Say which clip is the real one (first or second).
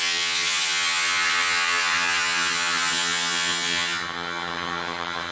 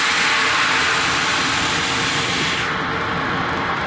second